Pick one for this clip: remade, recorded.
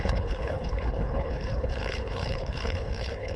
remade